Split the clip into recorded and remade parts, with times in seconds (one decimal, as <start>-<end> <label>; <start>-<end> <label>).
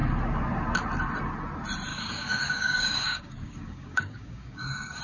0.0-1.9 recorded; 1.9-5.0 remade